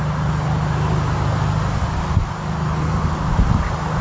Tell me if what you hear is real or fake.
real